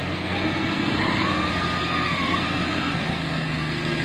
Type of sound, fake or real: fake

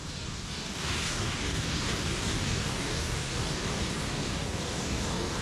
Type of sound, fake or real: fake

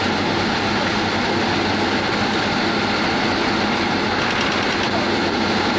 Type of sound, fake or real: real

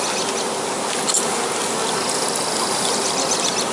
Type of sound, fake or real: real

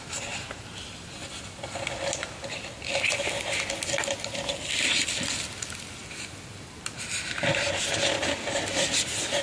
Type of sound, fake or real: real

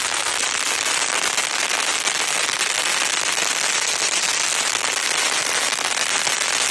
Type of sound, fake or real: real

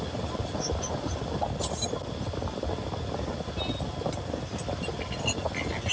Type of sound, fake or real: real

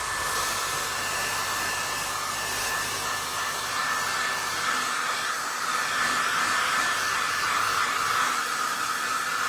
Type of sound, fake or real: real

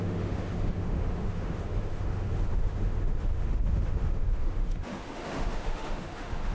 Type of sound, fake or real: fake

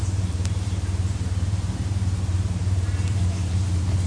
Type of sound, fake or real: fake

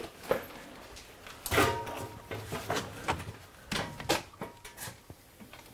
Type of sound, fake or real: real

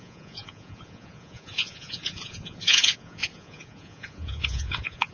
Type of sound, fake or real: fake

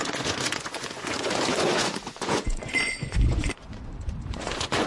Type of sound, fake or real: fake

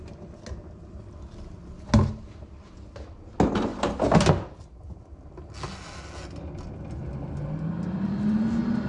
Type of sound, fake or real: real